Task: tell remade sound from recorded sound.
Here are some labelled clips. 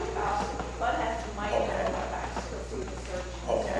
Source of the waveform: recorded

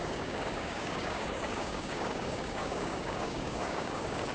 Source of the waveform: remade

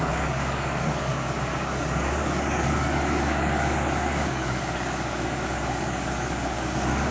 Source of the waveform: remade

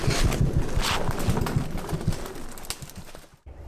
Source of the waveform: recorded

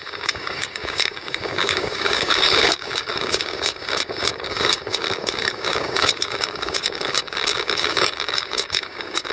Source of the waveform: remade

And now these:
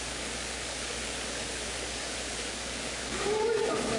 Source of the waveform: remade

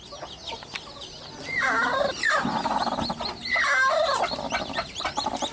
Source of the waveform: recorded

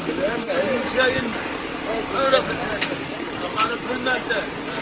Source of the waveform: remade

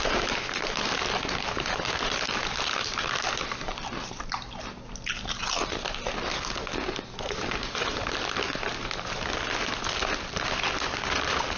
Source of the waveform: recorded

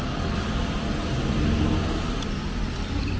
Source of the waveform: recorded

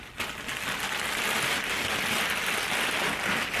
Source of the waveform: recorded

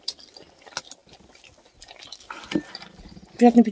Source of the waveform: recorded